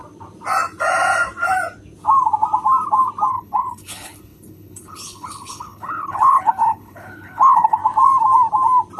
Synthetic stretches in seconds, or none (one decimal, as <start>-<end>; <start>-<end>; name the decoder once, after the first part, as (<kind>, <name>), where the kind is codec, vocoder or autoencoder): 3.3-7.8 (codec, HILCodec)